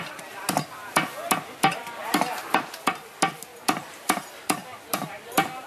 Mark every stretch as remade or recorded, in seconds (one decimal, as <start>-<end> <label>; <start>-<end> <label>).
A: 0.0-2.0 recorded; 2.0-2.6 remade; 2.6-3.5 recorded; 3.5-5.7 remade